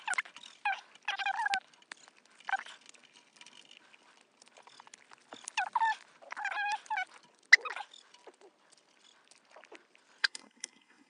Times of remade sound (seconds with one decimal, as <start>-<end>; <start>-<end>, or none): 10.2-11.1